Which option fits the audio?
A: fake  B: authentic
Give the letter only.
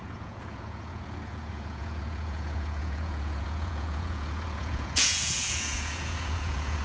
A